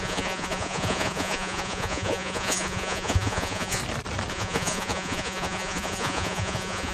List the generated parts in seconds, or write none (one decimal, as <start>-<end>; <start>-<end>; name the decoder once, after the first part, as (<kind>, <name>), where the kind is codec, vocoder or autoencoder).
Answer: 0.0-3.8 (vocoder, Vocos); 4.3-6.9